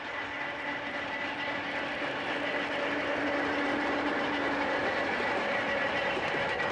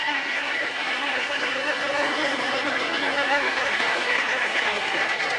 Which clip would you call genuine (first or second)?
first